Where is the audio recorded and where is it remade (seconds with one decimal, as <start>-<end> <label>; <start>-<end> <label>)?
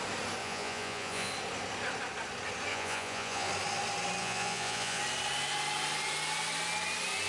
0.0-0.4 recorded; 0.4-1.3 remade; 1.3-2.7 recorded; 2.7-3.5 remade; 3.5-4.2 recorded; 4.2-5.0 remade; 5.0-7.3 recorded